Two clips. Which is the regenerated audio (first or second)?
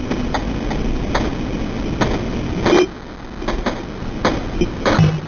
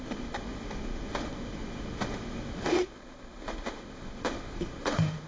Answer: second